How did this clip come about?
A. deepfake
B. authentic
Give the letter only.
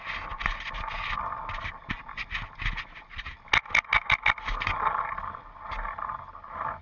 B